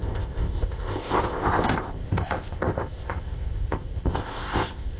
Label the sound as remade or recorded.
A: remade